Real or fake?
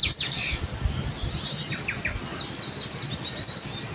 real